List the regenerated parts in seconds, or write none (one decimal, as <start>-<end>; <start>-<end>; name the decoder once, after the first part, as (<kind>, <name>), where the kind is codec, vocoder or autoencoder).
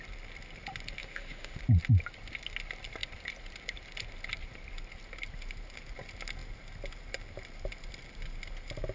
1.0-1.6 (autoencoder, DAC-VAE)